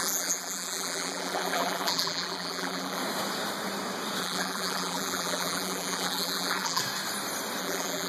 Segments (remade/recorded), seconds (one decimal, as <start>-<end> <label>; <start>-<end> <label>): 0.0-3.0 remade; 3.0-4.2 recorded; 4.2-6.8 remade; 6.8-7.6 recorded; 7.6-8.1 remade